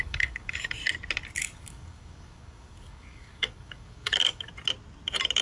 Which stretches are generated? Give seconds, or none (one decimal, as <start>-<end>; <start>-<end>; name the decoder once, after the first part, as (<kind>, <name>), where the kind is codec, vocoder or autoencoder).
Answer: 0.0-0.8 (codec, DAC); 1.4-4.5